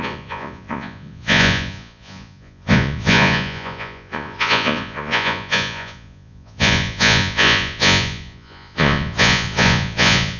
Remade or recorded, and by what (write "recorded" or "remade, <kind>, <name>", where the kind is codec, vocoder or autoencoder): remade, vocoder, Vocos